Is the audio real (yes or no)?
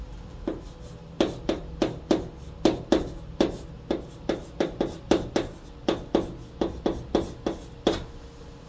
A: yes